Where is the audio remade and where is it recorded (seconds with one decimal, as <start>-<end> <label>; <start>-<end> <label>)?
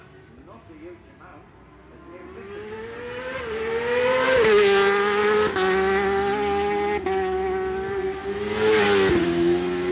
0.0-9.9 recorded